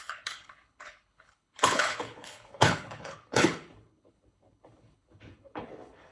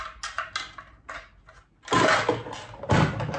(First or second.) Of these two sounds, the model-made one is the first